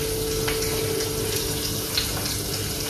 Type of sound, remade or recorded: recorded